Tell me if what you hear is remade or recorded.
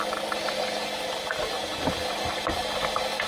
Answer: recorded